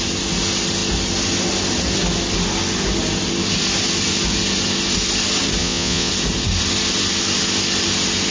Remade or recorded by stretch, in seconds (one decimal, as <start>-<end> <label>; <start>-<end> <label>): 0.0-5.6 recorded; 5.6-6.1 remade; 6.1-8.3 recorded